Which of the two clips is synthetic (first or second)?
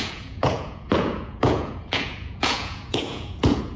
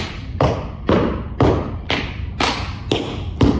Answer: first